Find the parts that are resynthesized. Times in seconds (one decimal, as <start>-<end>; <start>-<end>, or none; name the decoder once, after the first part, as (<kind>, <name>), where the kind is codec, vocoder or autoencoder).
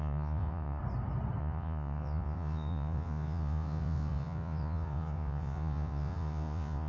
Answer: 0.0-0.8 (vocoder, Vocos); 1.4-6.9